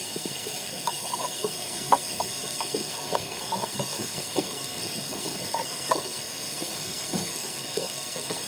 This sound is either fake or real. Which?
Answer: fake